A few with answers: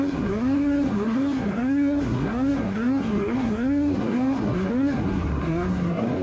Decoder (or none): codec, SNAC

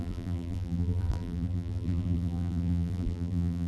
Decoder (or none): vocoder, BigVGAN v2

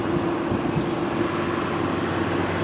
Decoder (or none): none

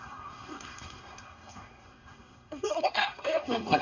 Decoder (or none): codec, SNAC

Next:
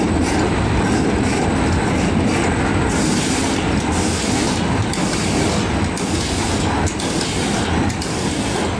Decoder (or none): none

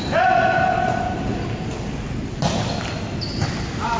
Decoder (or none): none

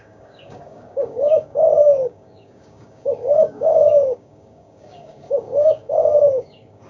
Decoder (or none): codec, DAC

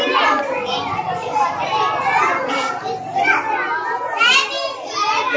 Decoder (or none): none